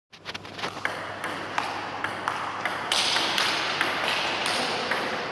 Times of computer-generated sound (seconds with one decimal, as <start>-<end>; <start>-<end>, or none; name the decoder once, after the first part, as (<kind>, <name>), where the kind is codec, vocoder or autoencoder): 4.4-5.3 (vocoder, BigVGAN v2)